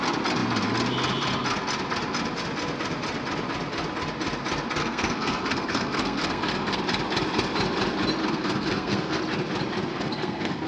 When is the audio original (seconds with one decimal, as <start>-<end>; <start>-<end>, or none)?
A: 0.0-4.8; 6.8-8.2; 9.2-9.9